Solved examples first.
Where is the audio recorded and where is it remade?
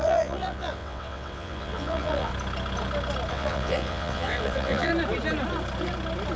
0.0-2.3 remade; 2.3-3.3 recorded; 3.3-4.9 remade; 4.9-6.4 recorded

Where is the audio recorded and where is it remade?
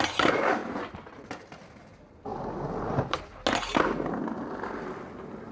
0.0-5.5 recorded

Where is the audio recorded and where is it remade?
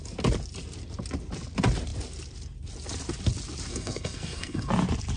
0.0-3.7 recorded; 3.7-4.7 remade; 4.7-5.2 recorded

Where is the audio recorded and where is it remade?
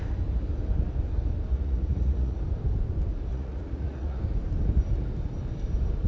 0.0-1.5 recorded; 1.5-2.4 remade; 2.4-3.3 recorded; 3.3-4.2 remade; 4.2-6.1 recorded